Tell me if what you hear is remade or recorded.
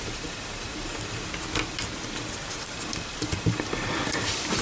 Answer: recorded